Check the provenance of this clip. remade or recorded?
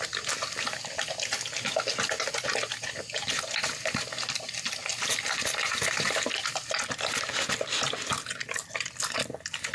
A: recorded